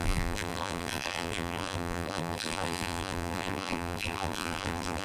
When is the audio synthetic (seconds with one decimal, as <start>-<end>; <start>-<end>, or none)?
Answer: 0.0-5.0